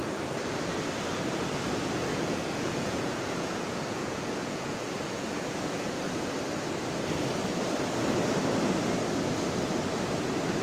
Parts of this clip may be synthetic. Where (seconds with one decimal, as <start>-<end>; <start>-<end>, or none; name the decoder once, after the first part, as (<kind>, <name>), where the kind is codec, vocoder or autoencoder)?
2.1-6.0 (vocoder, Vocos)